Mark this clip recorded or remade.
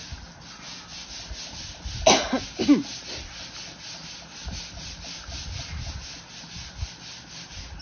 recorded